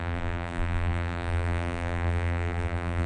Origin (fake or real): fake